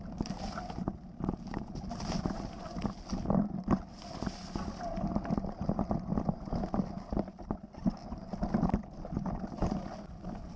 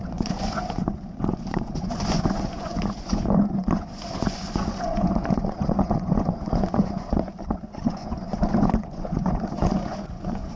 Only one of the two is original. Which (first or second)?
first